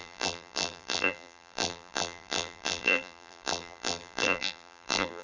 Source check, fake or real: fake